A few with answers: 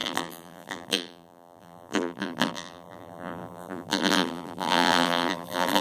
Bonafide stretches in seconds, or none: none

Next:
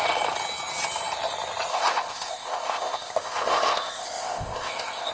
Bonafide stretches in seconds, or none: 0.0-1.7

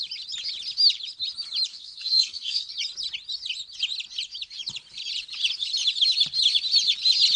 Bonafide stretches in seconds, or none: 0.0-1.7; 2.7-7.4

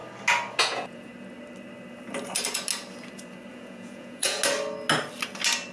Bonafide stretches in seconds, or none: 0.0-0.6; 1.1-3.5; 4.4-5.7

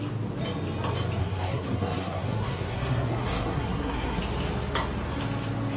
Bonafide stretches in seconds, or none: 0.0-1.2; 4.2-5.8

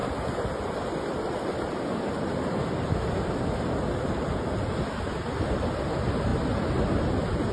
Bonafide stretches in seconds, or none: 0.0-7.5